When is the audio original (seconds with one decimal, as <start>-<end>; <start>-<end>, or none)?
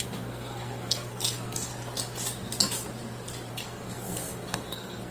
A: 1.7-3.5